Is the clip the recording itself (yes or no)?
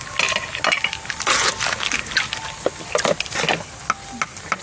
yes